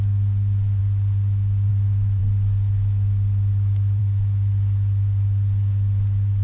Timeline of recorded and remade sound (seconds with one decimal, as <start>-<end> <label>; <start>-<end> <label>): 0.0-0.8 remade; 0.8-1.7 recorded; 1.7-2.2 remade; 2.2-4.0 recorded; 4.0-6.4 remade